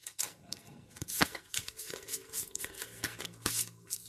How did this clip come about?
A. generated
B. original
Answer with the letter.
A